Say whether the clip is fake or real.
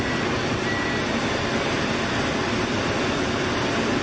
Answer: real